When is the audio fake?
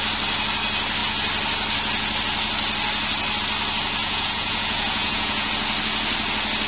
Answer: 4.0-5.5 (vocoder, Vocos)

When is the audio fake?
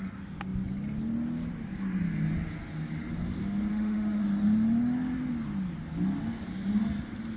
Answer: 3.7-4.2 (autoencoder, DAC-VAE)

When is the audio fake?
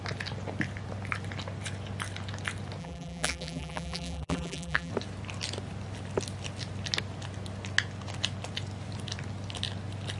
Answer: 2.8-4.9 (vocoder, BigVGAN v2)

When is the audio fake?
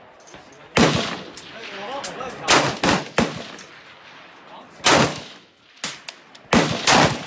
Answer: 5.1-5.6 (autoencoder, DAC-VAE)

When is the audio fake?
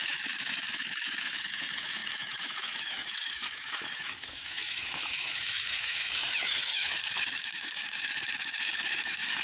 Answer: 0.0-9.4 (autoencoder, DAC-VAE)